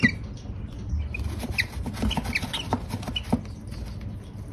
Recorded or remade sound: recorded